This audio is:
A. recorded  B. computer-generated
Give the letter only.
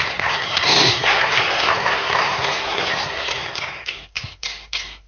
B